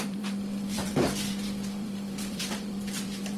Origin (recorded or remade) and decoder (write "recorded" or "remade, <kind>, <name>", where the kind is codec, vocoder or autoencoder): remade, vocoder, BigVGAN v2